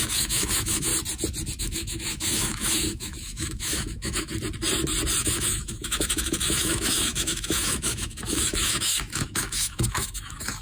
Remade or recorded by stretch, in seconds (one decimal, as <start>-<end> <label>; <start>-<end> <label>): 0.0-0.9 remade; 0.9-1.6 recorded; 1.6-4.3 remade; 4.3-5.2 recorded; 5.2-10.6 remade